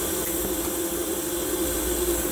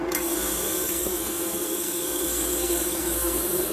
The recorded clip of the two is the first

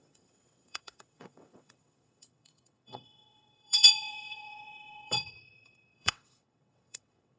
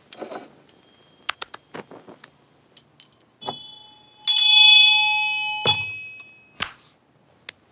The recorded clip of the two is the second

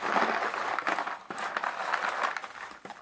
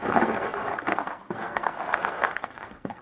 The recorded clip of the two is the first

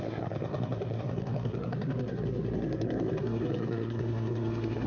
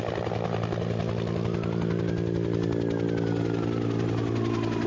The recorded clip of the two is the second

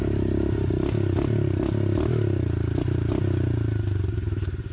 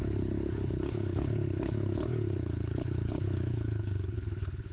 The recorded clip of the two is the first